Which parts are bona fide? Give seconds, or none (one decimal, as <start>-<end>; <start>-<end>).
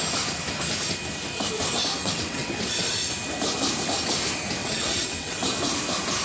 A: 0.0-2.0; 2.5-4.6; 5.4-6.2